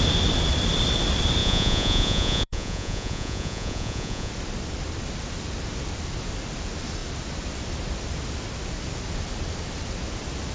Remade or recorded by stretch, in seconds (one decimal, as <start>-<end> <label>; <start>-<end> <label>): 0.0-1.4 recorded; 1.4-4.3 remade; 4.3-10.5 recorded